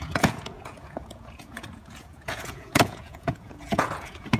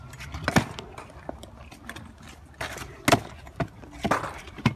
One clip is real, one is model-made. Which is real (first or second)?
second